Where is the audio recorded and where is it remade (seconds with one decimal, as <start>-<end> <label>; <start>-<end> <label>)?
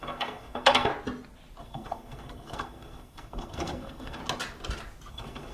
0.0-0.9 remade; 0.9-1.6 recorded; 1.6-4.2 remade; 4.2-5.1 recorded; 5.1-5.5 remade